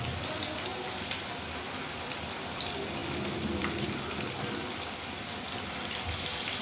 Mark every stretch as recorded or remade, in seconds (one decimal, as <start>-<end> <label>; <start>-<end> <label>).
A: 0.0-6.6 recorded